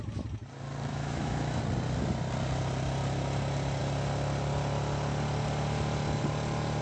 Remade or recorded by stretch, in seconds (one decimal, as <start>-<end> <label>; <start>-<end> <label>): 0.0-0.9 recorded; 0.9-1.6 remade; 1.6-6.8 recorded